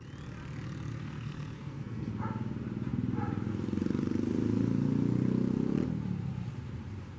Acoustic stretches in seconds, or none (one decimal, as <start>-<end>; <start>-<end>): 0.0-0.9; 2.1-7.2